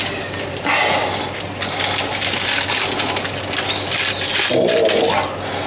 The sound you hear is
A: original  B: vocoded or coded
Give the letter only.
A